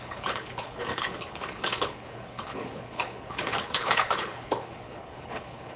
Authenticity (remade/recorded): remade